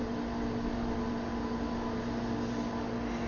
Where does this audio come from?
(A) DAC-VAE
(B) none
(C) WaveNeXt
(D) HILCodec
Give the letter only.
B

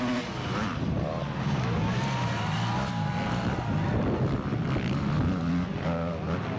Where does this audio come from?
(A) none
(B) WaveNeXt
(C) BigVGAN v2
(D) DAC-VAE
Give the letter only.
A